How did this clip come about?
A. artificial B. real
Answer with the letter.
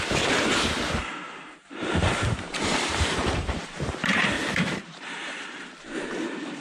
A